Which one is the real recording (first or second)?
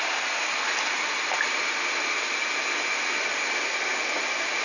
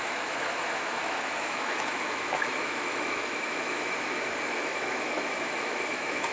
first